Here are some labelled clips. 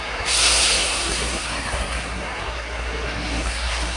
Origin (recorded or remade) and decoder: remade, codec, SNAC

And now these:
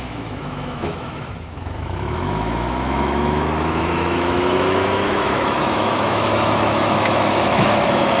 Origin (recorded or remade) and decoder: remade, autoencoder, DAC-VAE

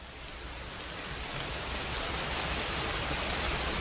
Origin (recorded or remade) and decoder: recorded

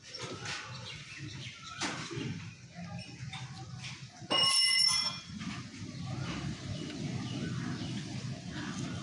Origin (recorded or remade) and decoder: recorded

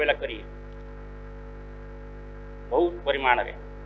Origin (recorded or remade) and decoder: recorded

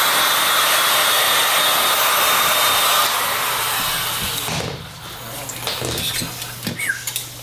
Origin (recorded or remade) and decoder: recorded